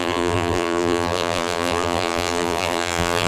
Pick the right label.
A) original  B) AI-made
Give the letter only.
B